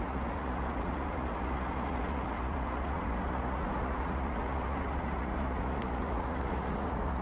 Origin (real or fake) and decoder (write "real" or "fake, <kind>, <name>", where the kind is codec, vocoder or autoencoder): fake, vocoder, Vocos